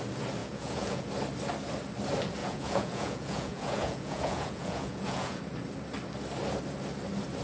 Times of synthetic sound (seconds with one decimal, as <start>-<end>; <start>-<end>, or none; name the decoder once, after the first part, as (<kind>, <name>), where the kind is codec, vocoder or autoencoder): 0.4-1.1 (vocoder, Vocos); 2.4-5.4